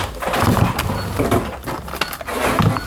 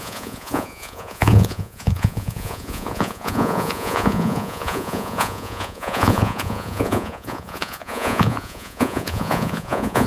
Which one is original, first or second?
first